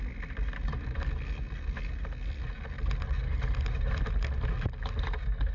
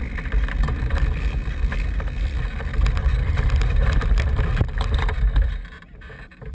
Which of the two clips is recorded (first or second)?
first